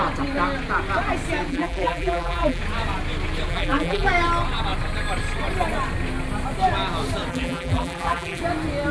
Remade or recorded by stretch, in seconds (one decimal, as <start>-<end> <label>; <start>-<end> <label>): 0.0-1.5 recorded; 1.5-2.6 remade; 2.6-3.5 recorded; 3.5-4.1 remade; 4.1-7.3 recorded; 7.3-8.4 remade; 8.4-8.9 recorded